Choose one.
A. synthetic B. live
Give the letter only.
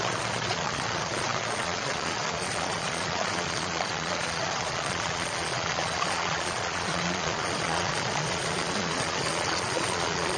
A